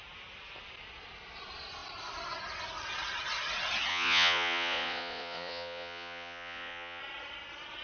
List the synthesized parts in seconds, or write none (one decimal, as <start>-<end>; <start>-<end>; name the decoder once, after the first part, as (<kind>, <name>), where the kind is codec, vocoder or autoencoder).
3.9-7.0 (vocoder, Vocos)